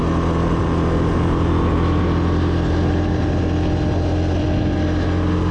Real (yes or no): yes